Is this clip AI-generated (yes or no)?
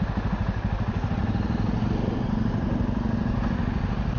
no